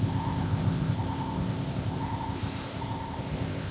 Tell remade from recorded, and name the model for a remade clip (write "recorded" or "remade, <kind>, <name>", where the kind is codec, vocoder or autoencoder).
remade, codec, ZipCodec